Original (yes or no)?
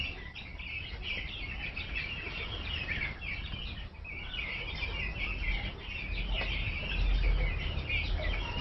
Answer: yes